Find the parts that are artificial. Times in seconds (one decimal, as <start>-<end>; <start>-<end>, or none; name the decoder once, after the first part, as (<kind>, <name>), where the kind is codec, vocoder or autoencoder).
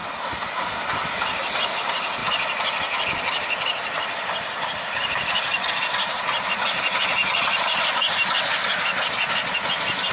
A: 2.2-5.7 (vocoder, BigVGAN v2); 7.2-8.1